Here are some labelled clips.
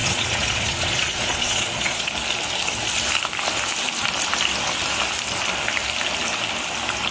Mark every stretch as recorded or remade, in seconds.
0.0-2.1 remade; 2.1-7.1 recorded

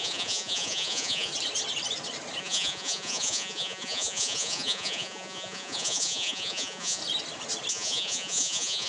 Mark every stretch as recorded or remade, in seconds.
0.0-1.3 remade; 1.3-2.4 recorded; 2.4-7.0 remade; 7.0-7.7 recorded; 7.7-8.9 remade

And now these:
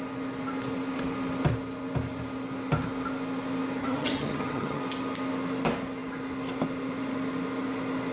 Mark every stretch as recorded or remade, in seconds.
0.0-3.8 recorded; 3.8-4.8 remade; 4.8-8.1 recorded

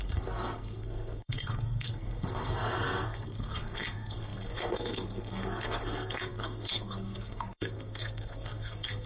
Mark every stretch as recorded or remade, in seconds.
0.0-9.1 remade

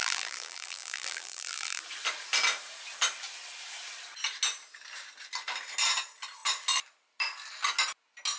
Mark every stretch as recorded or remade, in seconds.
0.0-1.8 remade; 1.8-8.4 recorded